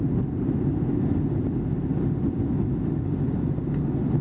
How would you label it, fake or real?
real